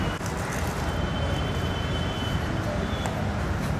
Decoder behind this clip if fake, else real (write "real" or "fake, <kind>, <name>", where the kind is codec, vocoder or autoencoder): real